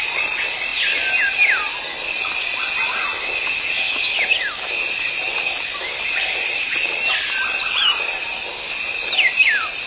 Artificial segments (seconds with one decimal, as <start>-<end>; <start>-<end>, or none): 0.0-0.7; 4.9-8.2; 8.9-9.9